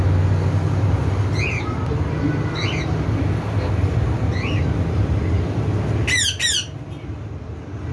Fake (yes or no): no